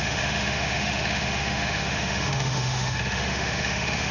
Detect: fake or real fake